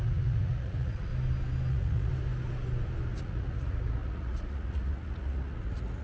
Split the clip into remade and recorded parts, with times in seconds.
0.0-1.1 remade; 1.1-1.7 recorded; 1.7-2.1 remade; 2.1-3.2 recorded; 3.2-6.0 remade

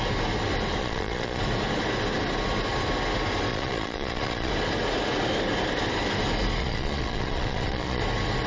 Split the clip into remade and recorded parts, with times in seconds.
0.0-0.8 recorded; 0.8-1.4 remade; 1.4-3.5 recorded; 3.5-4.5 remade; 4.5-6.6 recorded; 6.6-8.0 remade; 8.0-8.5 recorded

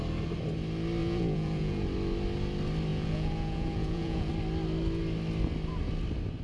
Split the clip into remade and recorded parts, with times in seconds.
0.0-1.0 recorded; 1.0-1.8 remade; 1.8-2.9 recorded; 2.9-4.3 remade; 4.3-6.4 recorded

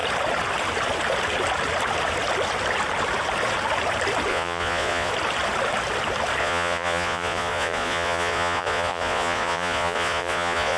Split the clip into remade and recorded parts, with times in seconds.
0.0-4.3 recorded; 4.3-5.1 remade; 5.1-6.4 recorded; 6.4-10.8 remade